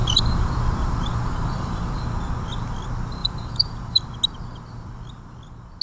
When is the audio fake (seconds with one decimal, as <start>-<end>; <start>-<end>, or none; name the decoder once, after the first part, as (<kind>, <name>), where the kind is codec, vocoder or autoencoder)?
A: 0.0-2.0 (vocoder, BigVGAN v2); 3.2-4.1